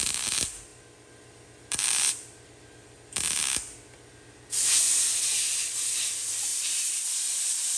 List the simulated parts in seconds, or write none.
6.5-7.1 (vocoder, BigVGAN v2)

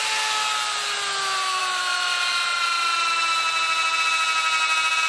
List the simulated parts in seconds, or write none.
none

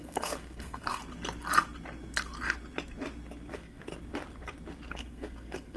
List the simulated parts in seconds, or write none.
0.0-1.0 (codec, SNAC); 3.5-3.9; 4.9-5.8

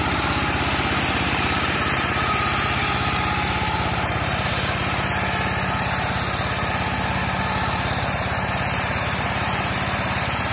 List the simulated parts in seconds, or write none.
0.0-4.5 (vocoder, BigVGAN v2); 7.5-10.5

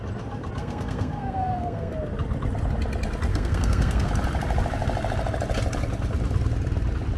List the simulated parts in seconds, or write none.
0.6-1.9 (codec, SNAC); 3.3-4.1

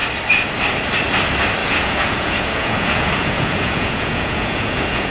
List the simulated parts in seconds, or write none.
1.6-5.1 (vocoder, Vocos)

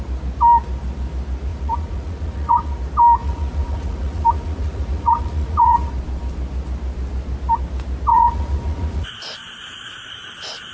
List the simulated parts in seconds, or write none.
1.5-2.8 (vocoder, Vocos); 3.2-5.9; 8.1-9.1